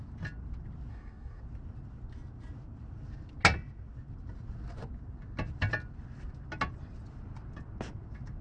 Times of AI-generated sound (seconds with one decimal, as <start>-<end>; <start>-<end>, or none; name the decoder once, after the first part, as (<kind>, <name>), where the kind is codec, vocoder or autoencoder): 0.9-1.4 (codec, DAC)